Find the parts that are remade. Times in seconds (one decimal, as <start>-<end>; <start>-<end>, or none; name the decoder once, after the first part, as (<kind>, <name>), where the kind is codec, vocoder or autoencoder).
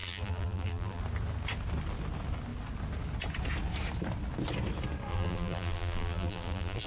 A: 0.0-1.0 (vocoder, BigVGAN v2); 5.1-6.9